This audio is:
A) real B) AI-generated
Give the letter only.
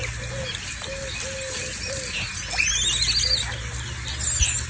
A